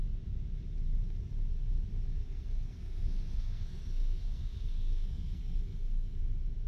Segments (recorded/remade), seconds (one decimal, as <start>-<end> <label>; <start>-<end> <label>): 0.0-2.2 recorded; 2.2-6.2 remade; 6.2-6.7 recorded